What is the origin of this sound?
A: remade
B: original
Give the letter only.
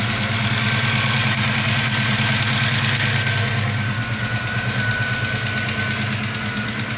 B